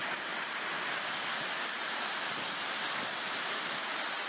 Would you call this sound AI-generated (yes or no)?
yes